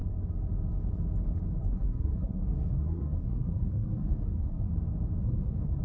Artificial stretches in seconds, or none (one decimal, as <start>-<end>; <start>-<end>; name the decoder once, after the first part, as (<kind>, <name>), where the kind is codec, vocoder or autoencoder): 1.6-4.7 (codec, SNAC); 5.2-5.8

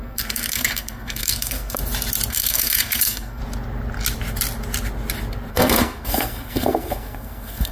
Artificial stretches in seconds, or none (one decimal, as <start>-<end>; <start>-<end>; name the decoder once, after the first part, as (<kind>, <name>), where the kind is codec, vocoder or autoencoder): 0.0-1.8 (codec, SNAC); 2.3-3.4; 5.5-7.7

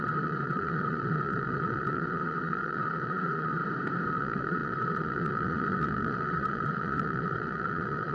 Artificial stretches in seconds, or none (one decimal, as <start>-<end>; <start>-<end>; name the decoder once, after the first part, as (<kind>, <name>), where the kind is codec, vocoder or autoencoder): 0.0-3.6 (vocoder, Vocos); 4.1-8.1

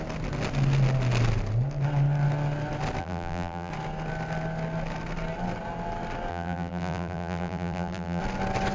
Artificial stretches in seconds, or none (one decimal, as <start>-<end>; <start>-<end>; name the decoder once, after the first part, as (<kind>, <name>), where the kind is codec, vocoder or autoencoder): 3.0-3.7 (vocoder, BigVGAN v2); 6.3-8.2

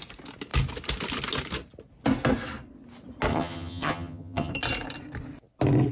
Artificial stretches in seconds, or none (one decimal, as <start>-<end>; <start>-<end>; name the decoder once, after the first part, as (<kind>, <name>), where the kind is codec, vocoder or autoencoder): 3.3-4.5 (vocoder, HiFi-GAN)

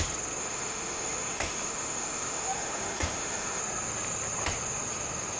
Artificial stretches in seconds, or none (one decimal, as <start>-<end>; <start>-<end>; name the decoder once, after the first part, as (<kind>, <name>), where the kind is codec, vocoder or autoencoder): 0.4-3.6 (autoencoder, DAC-VAE)

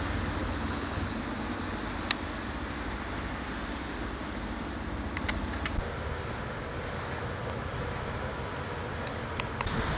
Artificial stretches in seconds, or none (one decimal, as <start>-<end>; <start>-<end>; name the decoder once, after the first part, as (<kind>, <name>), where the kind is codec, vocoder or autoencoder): 0.4-1.2 (codec, HILCodec)

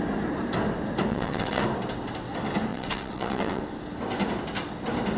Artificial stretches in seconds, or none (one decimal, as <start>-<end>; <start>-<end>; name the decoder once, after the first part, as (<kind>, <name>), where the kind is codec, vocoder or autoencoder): 1.1-1.6 (vocoder, WaveNeXt); 2.7-3.6